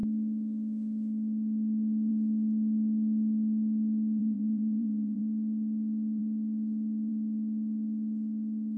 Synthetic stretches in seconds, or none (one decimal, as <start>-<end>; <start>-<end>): 4.2-5.2